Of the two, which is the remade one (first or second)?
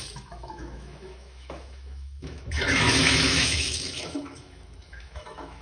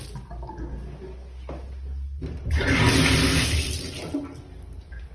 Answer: first